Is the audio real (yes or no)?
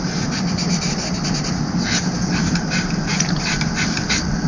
yes